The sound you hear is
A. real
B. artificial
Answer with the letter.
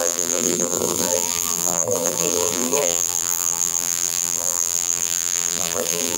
B